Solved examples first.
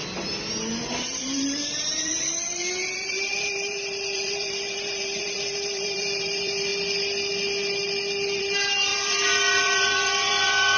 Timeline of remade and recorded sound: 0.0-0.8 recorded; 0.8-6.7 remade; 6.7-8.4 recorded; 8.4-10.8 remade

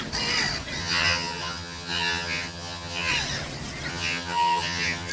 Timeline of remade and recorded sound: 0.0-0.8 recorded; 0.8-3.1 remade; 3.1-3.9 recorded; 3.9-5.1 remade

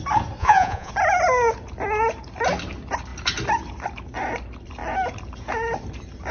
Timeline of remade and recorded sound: 0.0-0.4 recorded; 0.4-0.9 remade; 0.9-6.3 recorded

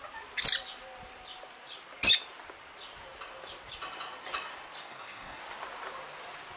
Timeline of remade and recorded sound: 0.0-4.8 recorded; 4.8-5.4 remade; 5.4-6.6 recorded